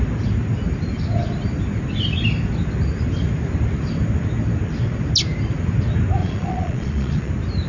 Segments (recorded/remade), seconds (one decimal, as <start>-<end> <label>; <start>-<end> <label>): 0.0-6.2 recorded; 6.2-7.3 remade; 7.3-7.7 recorded